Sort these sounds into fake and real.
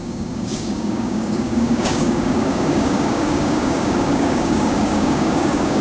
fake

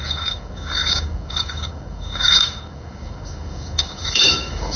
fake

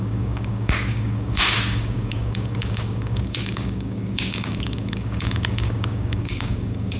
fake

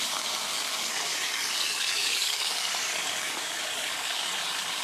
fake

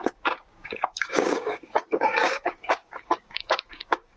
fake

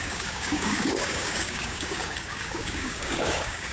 fake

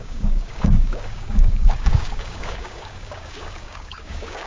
fake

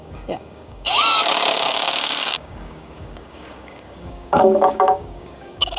fake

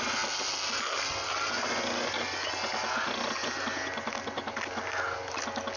real